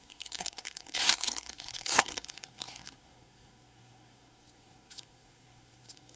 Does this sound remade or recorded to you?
remade